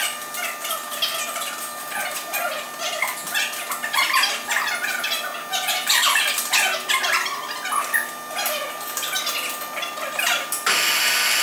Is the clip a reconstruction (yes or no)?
no